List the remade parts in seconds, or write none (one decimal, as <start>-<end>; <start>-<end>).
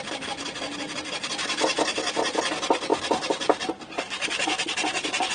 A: none